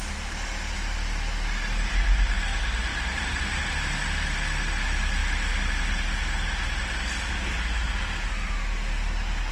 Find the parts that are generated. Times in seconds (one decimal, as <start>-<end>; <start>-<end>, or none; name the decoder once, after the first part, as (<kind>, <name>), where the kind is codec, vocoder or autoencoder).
2.9-3.4 (vocoder, BigVGAN v2)